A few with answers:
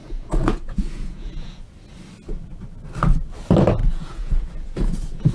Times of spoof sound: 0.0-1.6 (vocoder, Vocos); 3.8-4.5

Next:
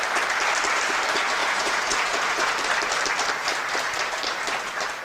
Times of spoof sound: 1.4-2.5 (vocoder, Vocos)

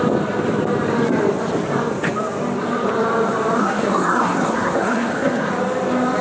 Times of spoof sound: 3.6-5.5 (codec, SNAC)

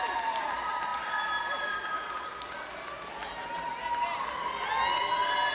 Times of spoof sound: 0.0-0.9 (vocoder, BigVGAN v2); 2.1-3.7